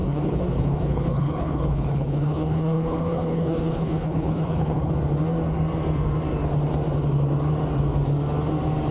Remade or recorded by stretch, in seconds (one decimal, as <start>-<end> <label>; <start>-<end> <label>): 0.0-4.9 remade; 4.9-8.9 recorded